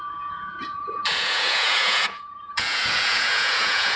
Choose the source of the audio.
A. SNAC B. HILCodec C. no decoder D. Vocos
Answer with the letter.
D